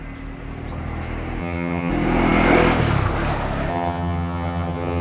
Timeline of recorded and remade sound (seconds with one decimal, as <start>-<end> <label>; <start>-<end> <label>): 0.0-1.4 recorded; 1.4-1.9 remade; 1.9-3.7 recorded; 3.7-5.0 remade